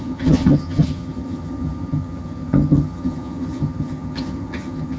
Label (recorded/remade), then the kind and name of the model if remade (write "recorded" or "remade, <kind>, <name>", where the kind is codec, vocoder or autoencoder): remade, vocoder, HiFi-GAN